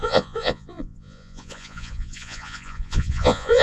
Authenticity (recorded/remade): remade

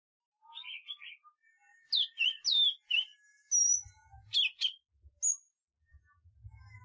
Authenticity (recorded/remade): recorded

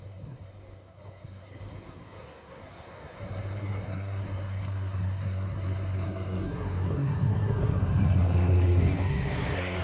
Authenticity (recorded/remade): remade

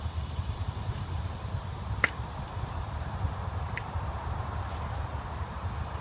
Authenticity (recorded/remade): remade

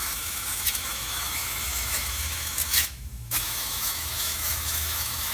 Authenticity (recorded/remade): remade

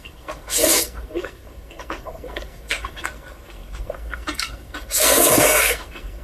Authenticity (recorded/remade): remade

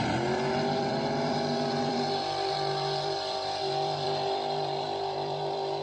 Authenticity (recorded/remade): remade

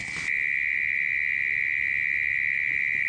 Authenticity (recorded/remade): recorded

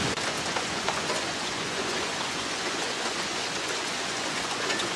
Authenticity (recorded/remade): remade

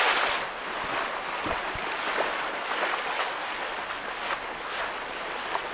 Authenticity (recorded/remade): recorded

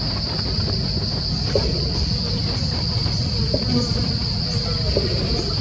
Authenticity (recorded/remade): recorded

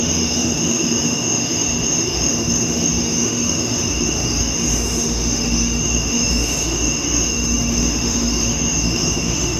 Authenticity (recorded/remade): remade